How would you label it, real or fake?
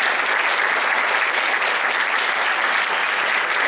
real